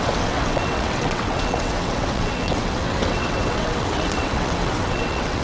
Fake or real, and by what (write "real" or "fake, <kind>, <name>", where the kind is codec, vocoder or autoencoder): fake, vocoder, WaveNeXt